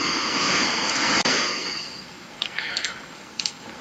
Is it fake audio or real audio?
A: fake